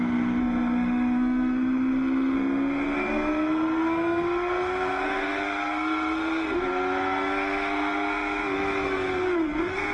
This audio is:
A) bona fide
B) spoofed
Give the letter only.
B